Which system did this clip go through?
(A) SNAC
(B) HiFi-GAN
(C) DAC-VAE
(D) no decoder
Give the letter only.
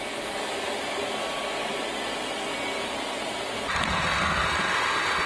D